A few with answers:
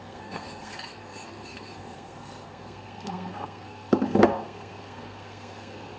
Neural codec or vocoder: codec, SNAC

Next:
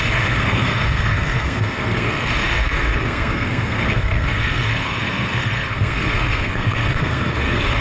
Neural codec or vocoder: codec, SNAC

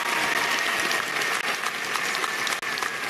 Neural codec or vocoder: none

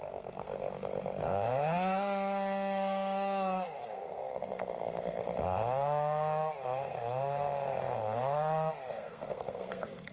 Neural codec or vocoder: codec, SNAC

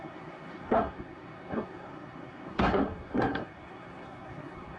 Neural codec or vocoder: codec, SNAC